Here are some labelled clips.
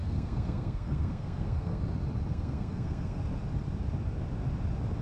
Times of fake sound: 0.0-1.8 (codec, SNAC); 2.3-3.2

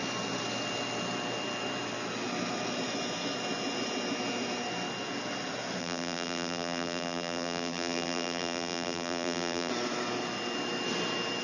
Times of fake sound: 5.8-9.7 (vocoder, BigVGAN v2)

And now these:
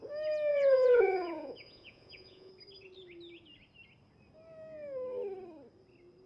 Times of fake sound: 0.5-2.5 (vocoder, Vocos)

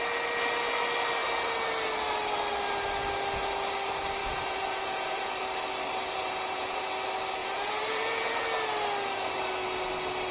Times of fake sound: 4.2-5.4 (vocoder, Vocos); 6.2-6.8; 7.4-8.3

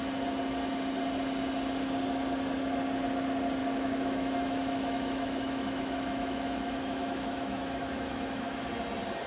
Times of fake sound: 3.6-8.7 (autoencoder, DAC-VAE)

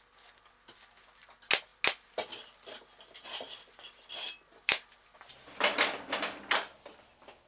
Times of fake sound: none